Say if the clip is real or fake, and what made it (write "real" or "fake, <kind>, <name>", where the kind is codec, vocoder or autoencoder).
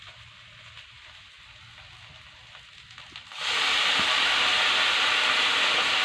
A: real